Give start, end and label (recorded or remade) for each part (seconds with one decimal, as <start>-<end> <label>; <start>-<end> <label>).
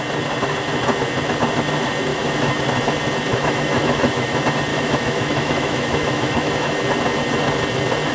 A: 0.0-2.1 recorded; 2.1-2.6 remade; 2.6-3.3 recorded; 3.3-4.3 remade; 4.3-4.7 recorded; 4.7-6.8 remade; 6.8-8.1 recorded